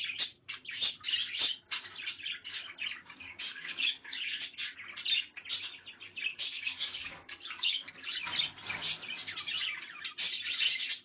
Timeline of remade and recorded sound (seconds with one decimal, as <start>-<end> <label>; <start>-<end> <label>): 0.0-3.0 recorded; 3.0-4.5 remade; 4.5-6.3 recorded; 6.3-7.9 remade; 7.9-11.0 recorded